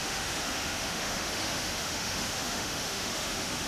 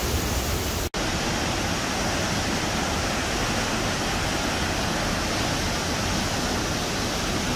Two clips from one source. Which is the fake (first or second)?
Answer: first